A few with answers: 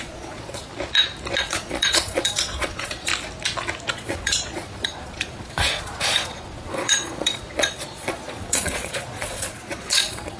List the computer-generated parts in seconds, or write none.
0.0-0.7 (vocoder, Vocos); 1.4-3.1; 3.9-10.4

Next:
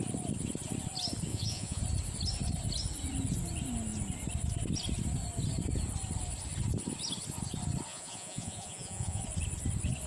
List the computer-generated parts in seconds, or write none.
1.3-1.8 (vocoder, Vocos); 7.9-9.2

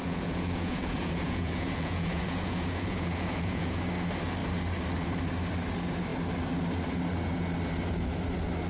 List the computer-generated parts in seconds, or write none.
0.0-3.8 (vocoder, Vocos)

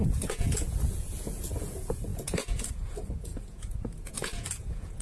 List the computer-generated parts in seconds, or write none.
0.0-5.0 (vocoder, Vocos)

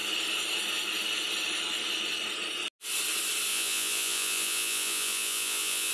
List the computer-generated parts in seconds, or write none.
3.5-5.9 (vocoder, Vocos)

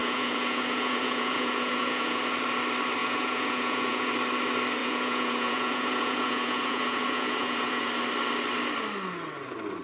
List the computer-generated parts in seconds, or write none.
0.0-2.2 (vocoder, Vocos); 3.0-4.1; 4.8-7.9

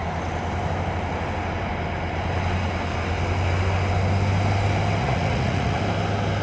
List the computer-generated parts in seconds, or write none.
5.0-5.8 (vocoder, Vocos)

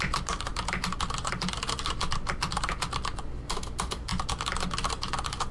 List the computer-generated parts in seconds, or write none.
none